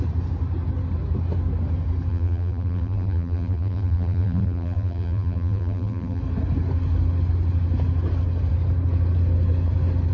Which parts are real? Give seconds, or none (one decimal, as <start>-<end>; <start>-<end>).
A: 0.0-2.1; 6.2-10.1